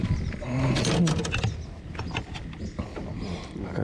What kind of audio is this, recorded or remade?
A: recorded